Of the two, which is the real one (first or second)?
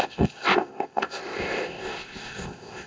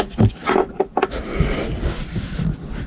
second